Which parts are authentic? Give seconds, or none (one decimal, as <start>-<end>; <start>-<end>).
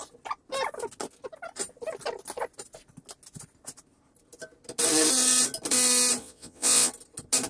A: 0.0-6.2; 6.9-7.5